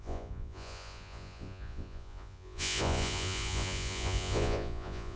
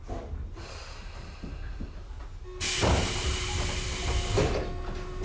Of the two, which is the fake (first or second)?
first